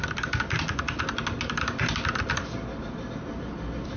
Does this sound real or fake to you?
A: real